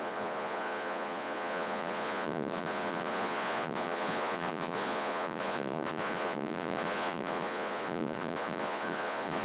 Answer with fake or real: fake